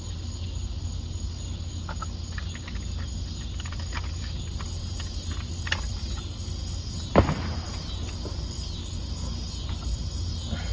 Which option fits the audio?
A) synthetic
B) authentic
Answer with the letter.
B